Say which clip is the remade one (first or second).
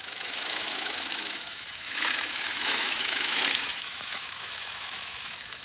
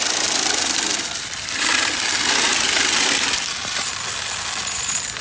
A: first